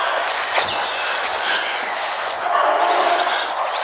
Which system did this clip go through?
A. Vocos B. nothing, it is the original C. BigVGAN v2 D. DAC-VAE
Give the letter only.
A